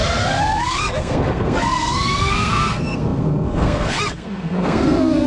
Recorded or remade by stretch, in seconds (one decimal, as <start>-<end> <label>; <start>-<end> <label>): 0.0-5.3 remade